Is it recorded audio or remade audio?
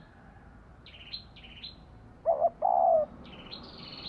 recorded